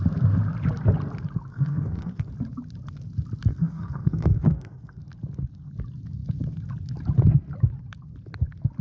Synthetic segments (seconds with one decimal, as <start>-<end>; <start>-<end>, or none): 1.5-2.3; 3.5-5.0